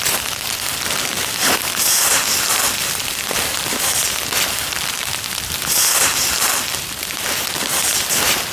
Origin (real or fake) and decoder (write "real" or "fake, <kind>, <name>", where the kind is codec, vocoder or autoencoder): real